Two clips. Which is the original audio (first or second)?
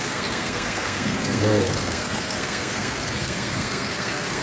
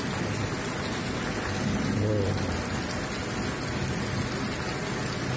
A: second